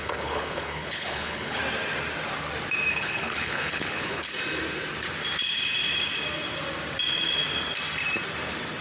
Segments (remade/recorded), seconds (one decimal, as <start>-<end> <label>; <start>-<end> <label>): 0.0-1.6 remade; 1.6-2.9 recorded; 2.9-4.3 remade; 4.3-8.8 recorded